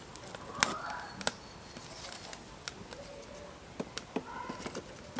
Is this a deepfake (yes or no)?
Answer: no